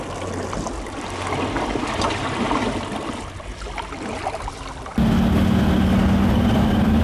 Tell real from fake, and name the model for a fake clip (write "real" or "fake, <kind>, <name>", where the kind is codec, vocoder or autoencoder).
real